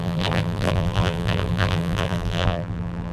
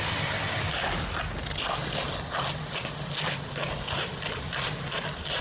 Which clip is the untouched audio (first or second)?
second